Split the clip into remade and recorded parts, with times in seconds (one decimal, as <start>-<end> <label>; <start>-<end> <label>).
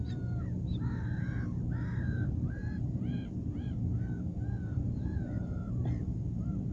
0.0-2.6 recorded; 2.6-6.7 remade